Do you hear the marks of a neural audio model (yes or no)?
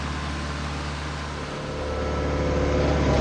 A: no